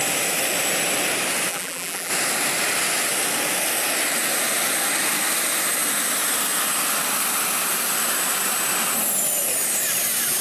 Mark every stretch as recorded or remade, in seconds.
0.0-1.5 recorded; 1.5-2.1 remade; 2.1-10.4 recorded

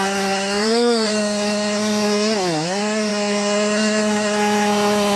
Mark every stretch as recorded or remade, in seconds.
0.0-5.2 remade